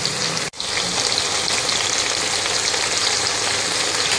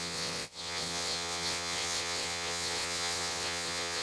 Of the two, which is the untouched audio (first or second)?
first